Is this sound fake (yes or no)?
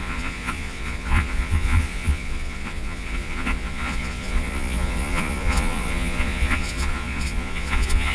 yes